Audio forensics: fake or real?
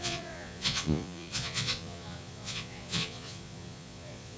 fake